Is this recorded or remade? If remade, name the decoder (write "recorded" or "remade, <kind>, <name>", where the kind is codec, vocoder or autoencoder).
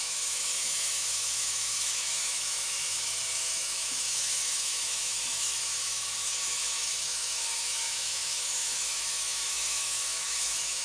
remade, autoencoder, DAC-VAE